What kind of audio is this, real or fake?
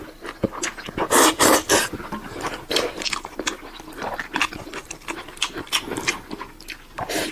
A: real